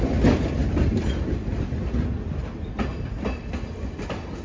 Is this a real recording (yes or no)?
yes